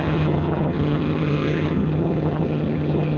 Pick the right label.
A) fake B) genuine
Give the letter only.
A